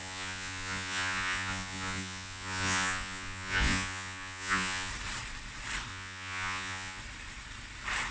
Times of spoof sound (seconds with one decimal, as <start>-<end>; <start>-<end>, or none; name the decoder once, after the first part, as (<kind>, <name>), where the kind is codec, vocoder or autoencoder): 0.0-4.9 (vocoder, Vocos); 5.9-7.0